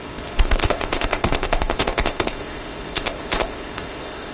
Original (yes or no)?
no